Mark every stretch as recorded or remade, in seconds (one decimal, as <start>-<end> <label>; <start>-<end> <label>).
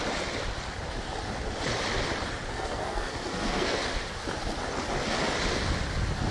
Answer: 0.0-2.5 recorded; 2.5-3.8 remade; 3.8-6.3 recorded